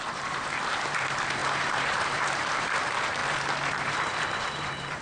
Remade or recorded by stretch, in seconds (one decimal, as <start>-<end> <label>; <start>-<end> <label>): 0.0-3.2 remade; 3.2-3.8 recorded; 3.8-5.0 remade